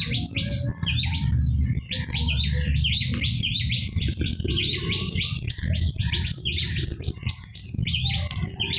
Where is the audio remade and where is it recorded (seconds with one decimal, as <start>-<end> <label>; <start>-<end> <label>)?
0.0-8.8 recorded